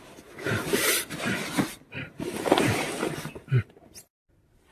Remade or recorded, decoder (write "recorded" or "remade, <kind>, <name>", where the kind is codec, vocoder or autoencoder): recorded